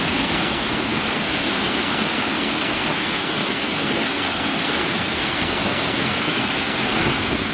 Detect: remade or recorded remade